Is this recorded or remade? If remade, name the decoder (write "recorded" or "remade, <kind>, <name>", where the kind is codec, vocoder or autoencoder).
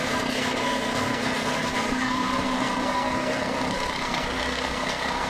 remade, codec, SNAC